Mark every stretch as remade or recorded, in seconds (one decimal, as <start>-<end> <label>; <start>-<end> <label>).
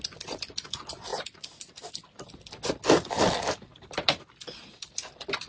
0.0-5.5 recorded